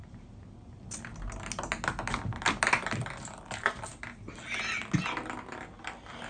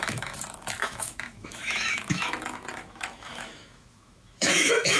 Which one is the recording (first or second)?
first